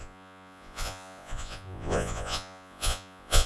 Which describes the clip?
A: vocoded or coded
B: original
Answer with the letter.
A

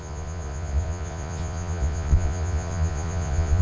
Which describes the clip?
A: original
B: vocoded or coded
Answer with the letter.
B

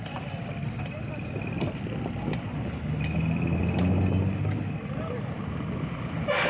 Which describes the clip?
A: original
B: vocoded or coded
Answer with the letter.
A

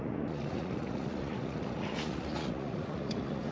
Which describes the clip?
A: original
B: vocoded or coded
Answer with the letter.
B